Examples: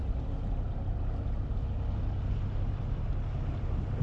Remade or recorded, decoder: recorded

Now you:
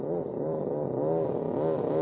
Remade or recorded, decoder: recorded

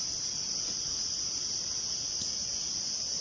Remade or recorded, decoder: recorded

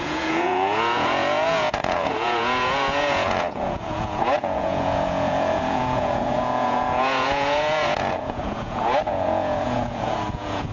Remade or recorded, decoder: remade, vocoder, Vocos